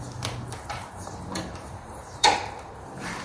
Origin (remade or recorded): remade